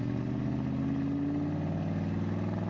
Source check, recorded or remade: recorded